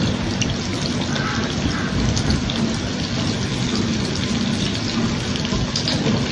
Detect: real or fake real